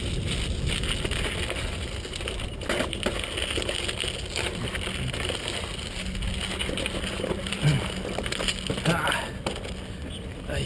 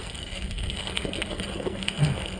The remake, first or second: second